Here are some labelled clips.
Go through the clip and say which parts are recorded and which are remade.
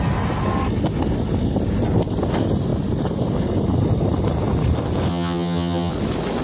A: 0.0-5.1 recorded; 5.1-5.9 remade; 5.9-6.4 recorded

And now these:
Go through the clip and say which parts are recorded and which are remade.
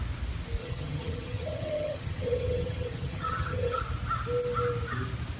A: 0.0-0.6 recorded; 0.6-3.8 remade; 3.8-5.4 recorded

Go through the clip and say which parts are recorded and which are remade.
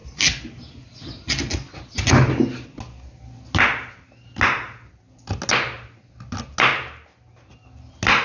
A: 0.0-8.2 recorded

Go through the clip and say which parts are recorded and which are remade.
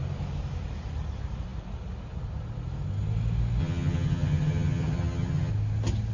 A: 0.0-3.6 recorded; 3.6-5.5 remade; 5.5-6.1 recorded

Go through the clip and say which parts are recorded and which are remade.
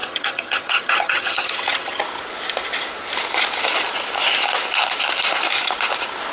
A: 0.0-2.0 remade; 2.0-6.3 recorded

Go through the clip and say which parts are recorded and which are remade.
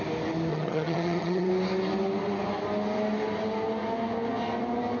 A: 0.0-0.5 recorded; 0.5-1.5 remade; 1.5-5.0 recorded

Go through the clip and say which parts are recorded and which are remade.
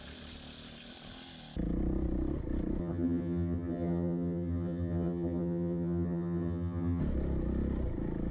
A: 0.0-2.8 recorded; 2.8-7.0 remade; 7.0-8.3 recorded